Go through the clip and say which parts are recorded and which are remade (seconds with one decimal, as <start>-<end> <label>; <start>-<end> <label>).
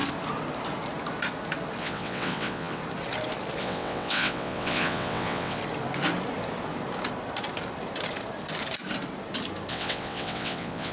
0.0-1.8 recorded; 1.8-2.8 remade; 2.8-3.6 recorded; 3.6-5.6 remade; 5.6-9.7 recorded; 9.7-10.9 remade